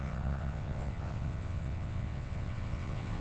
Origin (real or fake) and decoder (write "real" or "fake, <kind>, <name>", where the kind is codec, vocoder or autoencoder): fake, vocoder, WaveNeXt